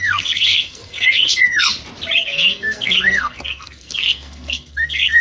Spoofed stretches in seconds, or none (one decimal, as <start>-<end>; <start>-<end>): 0.0-1.7; 2.2-5.2